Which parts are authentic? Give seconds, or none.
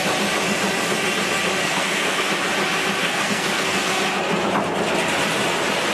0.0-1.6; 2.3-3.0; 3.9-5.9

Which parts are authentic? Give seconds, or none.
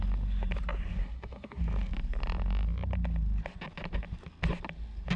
0.0-1.0; 1.6-5.2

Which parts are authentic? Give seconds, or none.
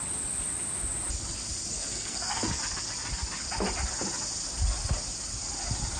0.0-1.7; 2.6-6.0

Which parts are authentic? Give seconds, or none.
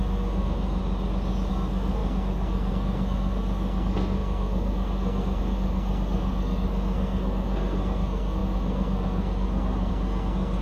0.8-1.5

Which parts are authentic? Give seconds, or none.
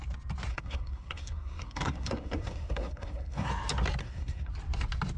0.0-0.5; 3.5-4.0; 4.5-5.2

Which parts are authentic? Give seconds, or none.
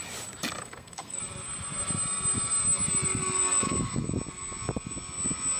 0.0-0.6; 1.2-5.6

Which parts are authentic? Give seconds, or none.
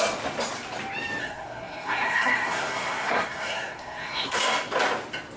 0.0-1.2; 4.4-5.4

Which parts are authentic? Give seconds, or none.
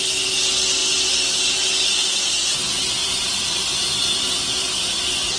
0.0-5.4